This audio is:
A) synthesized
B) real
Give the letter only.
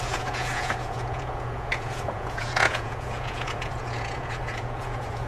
A